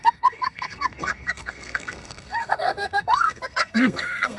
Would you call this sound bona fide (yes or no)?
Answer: no